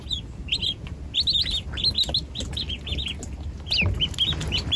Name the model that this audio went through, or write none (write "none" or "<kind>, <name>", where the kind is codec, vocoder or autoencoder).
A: none